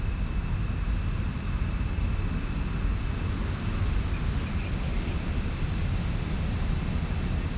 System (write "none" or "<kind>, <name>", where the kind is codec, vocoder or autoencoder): none